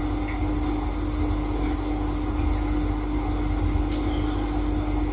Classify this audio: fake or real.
real